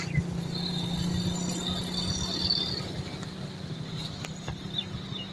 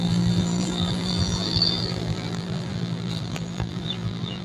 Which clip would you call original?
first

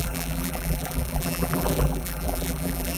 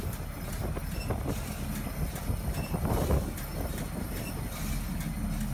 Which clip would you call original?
second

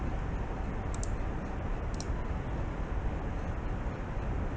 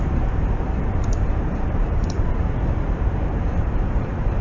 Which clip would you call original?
first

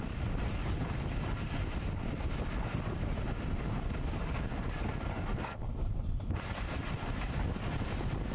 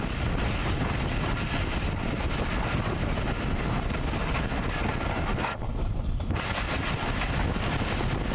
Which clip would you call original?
second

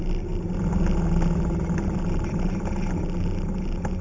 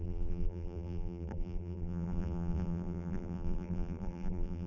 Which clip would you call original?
first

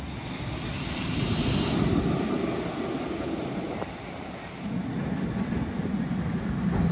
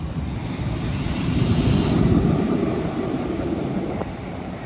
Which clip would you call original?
first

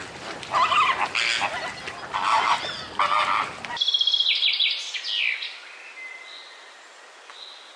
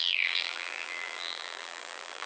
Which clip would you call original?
first